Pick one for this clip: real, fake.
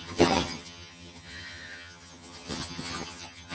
fake